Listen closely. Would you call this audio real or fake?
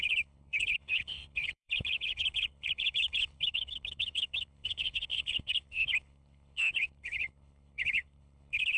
fake